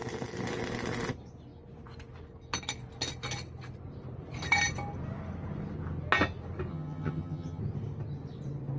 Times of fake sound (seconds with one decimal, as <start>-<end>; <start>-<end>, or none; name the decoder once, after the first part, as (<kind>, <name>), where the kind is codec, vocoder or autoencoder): 6.7-7.6 (vocoder, HiFi-GAN)